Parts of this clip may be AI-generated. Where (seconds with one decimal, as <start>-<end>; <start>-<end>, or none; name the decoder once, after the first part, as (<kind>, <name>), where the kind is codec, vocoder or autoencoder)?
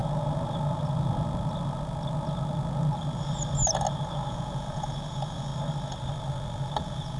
4.3-5.5 (vocoder, Vocos); 6.8-7.2